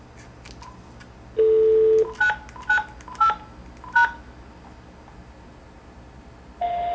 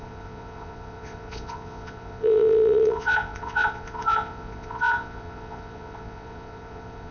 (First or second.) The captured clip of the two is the first